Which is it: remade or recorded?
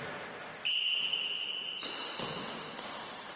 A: recorded